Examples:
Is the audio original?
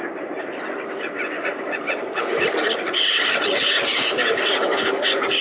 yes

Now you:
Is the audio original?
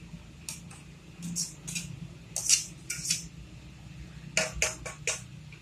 yes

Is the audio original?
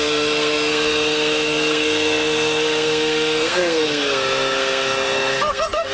no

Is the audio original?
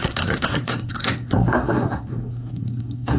no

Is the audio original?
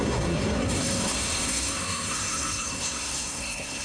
no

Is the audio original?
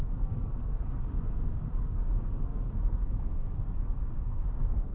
no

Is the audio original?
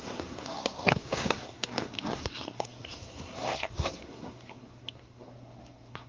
no